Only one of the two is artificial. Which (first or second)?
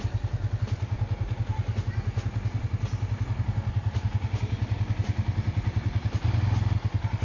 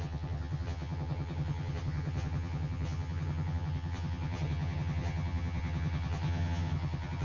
second